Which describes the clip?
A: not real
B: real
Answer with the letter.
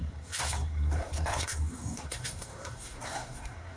A